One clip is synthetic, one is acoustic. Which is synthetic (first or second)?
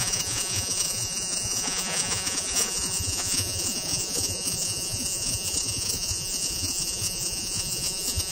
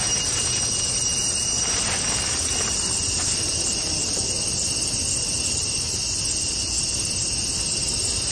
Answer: first